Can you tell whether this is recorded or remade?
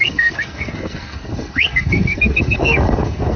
remade